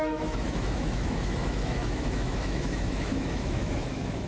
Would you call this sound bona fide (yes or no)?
no